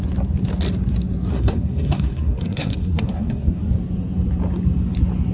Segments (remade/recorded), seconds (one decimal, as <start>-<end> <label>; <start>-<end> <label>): 0.0-1.3 recorded; 1.3-3.7 remade; 3.7-5.3 recorded